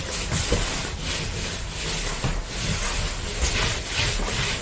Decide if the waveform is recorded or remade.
recorded